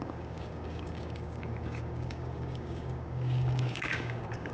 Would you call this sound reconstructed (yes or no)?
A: yes